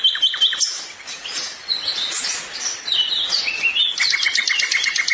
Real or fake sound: real